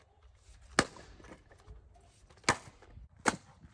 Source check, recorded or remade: recorded